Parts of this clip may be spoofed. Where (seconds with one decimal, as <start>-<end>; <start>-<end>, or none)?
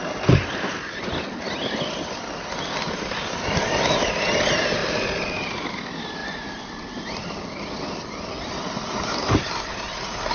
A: none